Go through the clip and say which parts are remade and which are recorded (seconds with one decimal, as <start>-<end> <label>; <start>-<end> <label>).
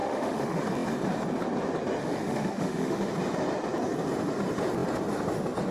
0.0-0.6 remade; 0.6-2.0 recorded; 2.0-3.1 remade; 3.1-5.7 recorded